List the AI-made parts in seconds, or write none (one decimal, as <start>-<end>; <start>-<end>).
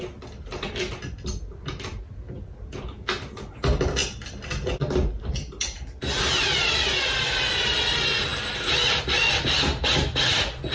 none